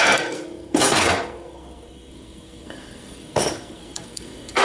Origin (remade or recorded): remade